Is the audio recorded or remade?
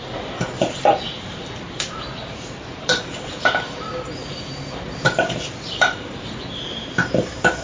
remade